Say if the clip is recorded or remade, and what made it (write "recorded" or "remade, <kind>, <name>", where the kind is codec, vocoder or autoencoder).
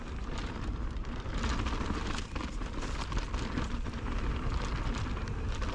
recorded